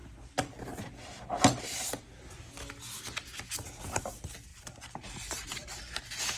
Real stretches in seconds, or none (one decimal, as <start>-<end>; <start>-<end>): 0.0-4.5; 6.0-6.4